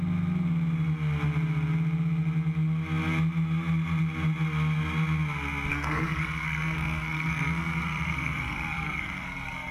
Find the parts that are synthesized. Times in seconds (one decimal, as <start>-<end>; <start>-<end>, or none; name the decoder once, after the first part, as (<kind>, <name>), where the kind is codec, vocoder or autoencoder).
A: 5.7-9.7 (codec, SNAC)